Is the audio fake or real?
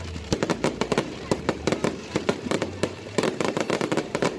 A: fake